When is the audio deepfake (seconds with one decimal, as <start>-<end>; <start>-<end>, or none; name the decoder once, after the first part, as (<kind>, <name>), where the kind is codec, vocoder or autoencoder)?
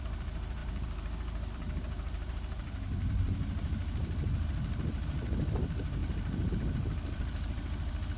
0.0-8.2 (vocoder, BigVGAN v2)